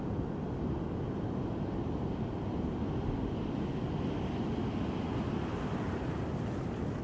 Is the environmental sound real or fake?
real